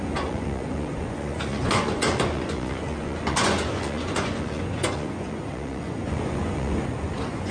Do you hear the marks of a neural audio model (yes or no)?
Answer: yes